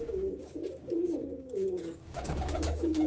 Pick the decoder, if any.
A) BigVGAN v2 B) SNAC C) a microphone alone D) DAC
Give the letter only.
D